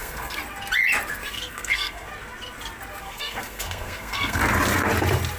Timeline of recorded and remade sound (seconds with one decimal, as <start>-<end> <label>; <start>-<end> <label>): 0.0-0.4 remade; 0.4-1.2 recorded; 1.2-2.1 remade; 2.1-3.0 recorded; 3.0-4.4 remade; 4.4-5.4 recorded